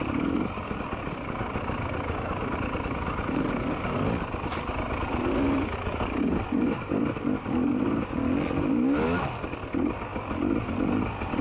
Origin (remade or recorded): remade